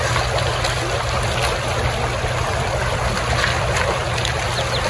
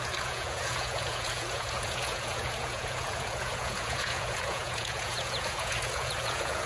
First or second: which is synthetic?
second